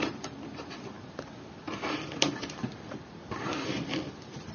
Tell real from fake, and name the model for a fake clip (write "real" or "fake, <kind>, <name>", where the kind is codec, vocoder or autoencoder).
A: fake, vocoder, BigVGAN v2